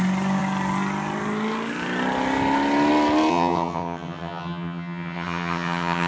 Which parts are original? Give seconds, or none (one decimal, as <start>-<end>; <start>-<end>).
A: 0.0-3.3